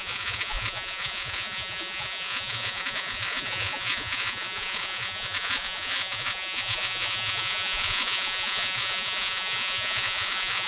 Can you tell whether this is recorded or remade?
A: remade